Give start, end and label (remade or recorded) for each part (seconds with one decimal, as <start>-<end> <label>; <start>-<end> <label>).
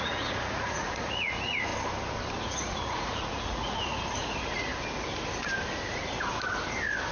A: 0.0-1.7 remade; 1.7-2.4 recorded; 2.4-4.7 remade; 4.7-7.1 recorded